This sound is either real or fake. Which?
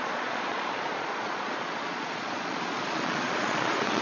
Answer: fake